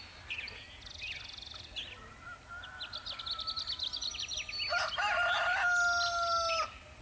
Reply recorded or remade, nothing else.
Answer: recorded